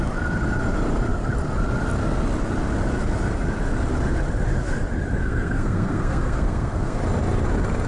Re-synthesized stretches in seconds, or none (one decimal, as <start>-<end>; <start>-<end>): 5.2-7.0